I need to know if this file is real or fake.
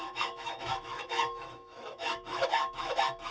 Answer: fake